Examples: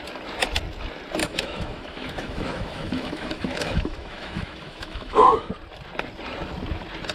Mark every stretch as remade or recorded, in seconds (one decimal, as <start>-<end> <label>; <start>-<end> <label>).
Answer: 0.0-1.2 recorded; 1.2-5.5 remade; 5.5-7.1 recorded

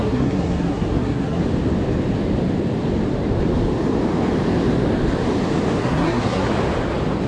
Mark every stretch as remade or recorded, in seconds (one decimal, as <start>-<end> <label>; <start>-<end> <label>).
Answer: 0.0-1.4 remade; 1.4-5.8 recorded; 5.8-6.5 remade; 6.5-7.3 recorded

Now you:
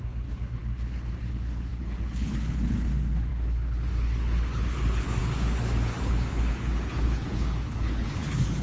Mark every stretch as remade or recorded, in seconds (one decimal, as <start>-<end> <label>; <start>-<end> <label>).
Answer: 0.0-8.6 remade